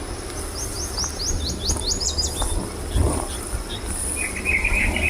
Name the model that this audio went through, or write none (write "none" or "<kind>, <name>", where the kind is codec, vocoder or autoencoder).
none